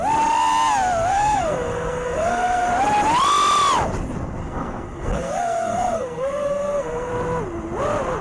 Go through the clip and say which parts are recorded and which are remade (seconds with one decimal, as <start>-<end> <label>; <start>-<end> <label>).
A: 0.0-1.1 recorded; 1.1-2.7 remade; 2.7-4.4 recorded; 4.4-7.1 remade; 7.1-8.2 recorded